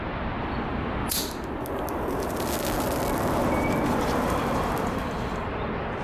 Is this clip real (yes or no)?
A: yes